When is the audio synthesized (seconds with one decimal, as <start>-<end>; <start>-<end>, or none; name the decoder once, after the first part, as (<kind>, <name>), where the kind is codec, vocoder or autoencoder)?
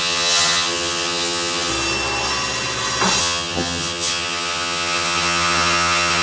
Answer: 0.0-1.7 (vocoder, HiFi-GAN); 3.2-6.2